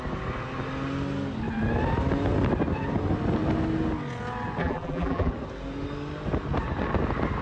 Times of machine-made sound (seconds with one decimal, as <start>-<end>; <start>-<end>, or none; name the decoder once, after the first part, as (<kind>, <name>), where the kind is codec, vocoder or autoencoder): 4.6-5.3 (vocoder, BigVGAN v2)